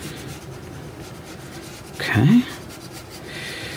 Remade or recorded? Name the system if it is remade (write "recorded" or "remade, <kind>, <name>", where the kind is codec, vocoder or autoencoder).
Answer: recorded